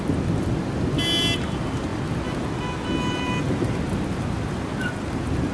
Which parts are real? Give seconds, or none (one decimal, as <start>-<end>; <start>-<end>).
0.0-5.5